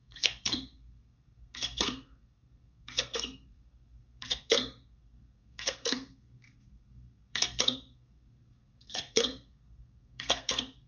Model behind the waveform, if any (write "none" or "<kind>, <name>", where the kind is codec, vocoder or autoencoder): codec, SNAC